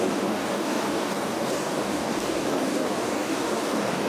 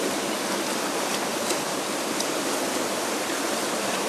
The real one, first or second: second